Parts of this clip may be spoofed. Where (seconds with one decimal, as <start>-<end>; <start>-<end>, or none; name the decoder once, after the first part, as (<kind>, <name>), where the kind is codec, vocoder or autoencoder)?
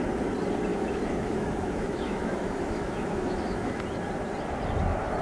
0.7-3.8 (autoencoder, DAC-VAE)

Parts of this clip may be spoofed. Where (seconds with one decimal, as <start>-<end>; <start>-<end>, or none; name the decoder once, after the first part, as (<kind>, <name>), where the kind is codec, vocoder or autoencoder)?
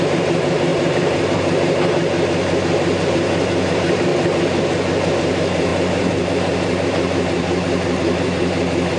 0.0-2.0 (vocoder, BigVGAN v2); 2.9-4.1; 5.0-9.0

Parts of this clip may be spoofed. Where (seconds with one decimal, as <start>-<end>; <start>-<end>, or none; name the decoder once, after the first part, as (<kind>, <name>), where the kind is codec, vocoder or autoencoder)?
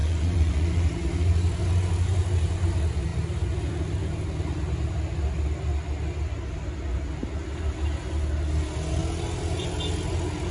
0.0-0.8 (vocoder, Vocos)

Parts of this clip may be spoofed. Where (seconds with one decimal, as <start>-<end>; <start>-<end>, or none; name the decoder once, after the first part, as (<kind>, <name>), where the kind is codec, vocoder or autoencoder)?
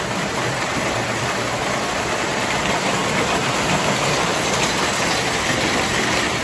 0.0-4.3 (vocoder, BigVGAN v2); 5.4-6.4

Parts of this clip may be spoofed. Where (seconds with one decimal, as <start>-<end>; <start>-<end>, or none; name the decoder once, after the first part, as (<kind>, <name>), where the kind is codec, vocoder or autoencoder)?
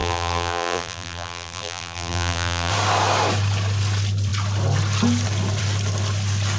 0.0-2.7 (vocoder, BigVGAN v2)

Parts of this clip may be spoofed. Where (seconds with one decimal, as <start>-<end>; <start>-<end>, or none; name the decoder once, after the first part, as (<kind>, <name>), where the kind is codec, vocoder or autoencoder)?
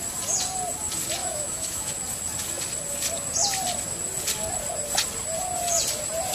1.2-1.9 (autoencoder, DAC-VAE)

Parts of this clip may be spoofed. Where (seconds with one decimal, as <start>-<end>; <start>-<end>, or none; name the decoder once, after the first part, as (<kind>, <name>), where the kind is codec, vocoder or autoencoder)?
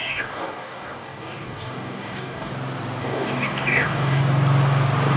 0.0-2.5 (codec, DAC); 3.0-4.2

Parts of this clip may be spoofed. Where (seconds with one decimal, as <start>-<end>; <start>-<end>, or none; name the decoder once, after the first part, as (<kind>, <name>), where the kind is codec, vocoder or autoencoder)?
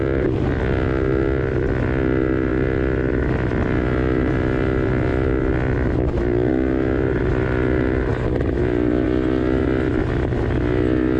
none